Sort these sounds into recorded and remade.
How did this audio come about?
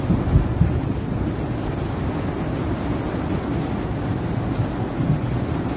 recorded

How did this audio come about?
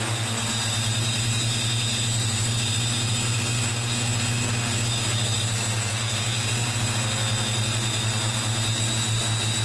recorded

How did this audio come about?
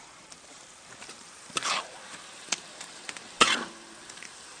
remade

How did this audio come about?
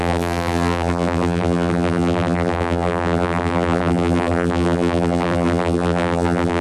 remade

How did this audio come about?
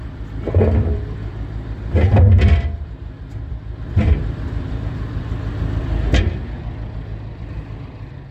remade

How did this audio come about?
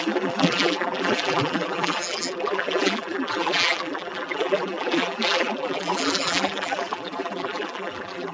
remade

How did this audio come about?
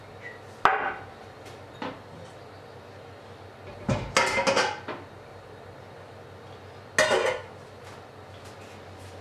recorded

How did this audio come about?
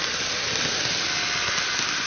remade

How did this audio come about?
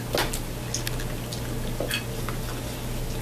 recorded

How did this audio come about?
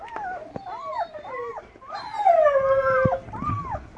remade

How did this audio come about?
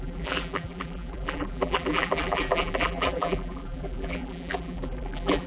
remade